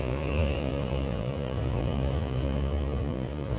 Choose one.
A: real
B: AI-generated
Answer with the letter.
B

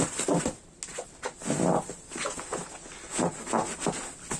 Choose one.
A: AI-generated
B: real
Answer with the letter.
B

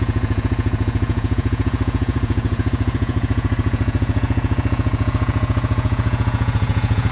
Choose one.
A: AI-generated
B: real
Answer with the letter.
A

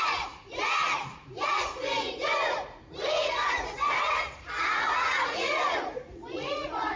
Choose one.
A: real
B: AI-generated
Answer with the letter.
B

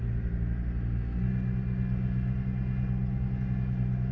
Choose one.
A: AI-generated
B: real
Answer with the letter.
B